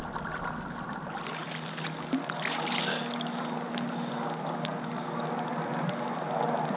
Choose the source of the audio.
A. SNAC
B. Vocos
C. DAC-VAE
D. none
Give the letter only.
D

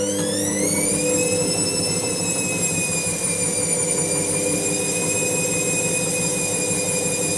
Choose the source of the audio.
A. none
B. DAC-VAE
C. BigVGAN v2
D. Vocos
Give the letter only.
A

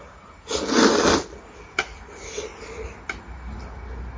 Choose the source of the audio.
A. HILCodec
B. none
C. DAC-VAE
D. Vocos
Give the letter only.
B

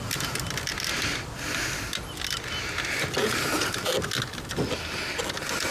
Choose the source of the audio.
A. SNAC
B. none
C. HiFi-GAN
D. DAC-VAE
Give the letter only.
B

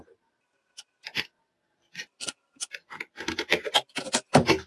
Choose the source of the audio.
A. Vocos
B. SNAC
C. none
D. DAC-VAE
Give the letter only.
C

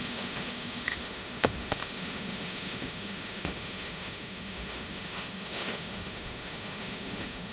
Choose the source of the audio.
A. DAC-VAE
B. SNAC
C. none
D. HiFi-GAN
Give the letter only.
A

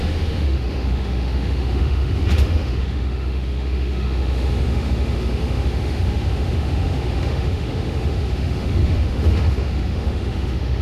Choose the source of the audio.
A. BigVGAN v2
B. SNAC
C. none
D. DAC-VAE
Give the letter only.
D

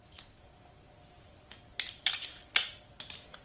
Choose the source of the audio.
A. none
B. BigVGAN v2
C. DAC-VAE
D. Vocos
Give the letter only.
A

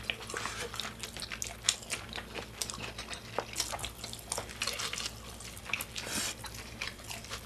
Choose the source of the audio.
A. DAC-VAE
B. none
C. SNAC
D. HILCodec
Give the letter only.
B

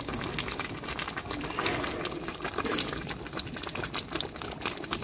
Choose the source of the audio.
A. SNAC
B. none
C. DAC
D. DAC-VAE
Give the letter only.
B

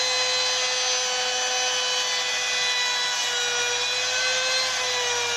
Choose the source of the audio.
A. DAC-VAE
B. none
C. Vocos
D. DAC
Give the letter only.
B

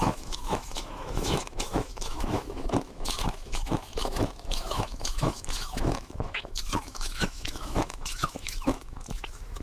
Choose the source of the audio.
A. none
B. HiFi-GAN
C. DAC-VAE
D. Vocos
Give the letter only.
C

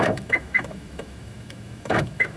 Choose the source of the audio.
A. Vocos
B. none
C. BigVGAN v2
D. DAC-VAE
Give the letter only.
D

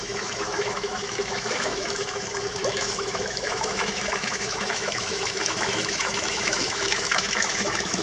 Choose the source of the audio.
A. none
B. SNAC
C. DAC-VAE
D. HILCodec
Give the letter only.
C